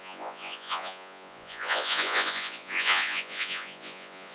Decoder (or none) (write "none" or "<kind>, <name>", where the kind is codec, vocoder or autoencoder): vocoder, Vocos